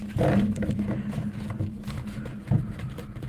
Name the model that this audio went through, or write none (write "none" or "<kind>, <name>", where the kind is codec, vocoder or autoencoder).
vocoder, BigVGAN v2